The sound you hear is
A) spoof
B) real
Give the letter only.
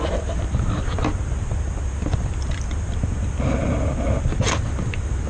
B